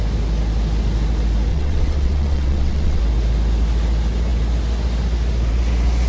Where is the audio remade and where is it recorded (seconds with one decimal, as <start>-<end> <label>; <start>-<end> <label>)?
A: 0.0-1.5 recorded; 1.5-3.0 remade; 3.0-6.1 recorded